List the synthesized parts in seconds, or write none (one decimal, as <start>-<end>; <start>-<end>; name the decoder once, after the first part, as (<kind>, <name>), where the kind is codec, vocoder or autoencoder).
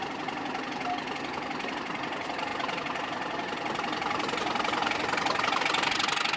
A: none